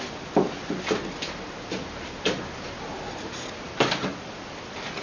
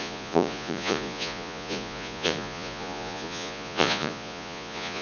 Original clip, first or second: first